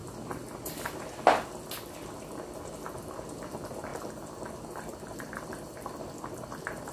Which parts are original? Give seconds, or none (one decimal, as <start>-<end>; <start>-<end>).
0.0-6.9